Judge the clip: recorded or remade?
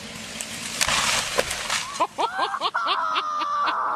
recorded